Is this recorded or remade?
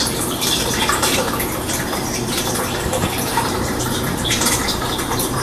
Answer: remade